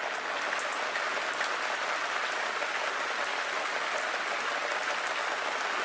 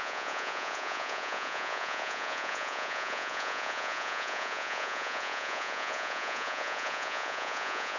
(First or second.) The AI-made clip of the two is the second